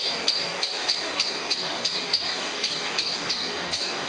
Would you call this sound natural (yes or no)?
no